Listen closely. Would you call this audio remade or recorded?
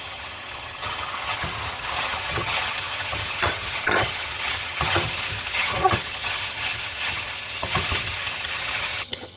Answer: remade